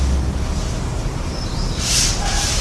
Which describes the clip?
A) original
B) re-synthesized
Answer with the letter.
B